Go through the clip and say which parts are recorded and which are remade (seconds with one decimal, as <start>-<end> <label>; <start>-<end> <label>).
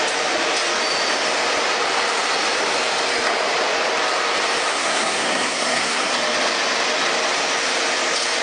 0.0-4.7 recorded; 4.7-6.1 remade; 6.1-8.4 recorded